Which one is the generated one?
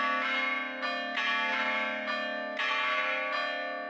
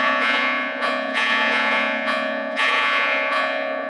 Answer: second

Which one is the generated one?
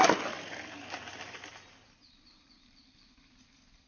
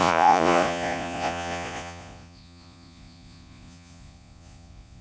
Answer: second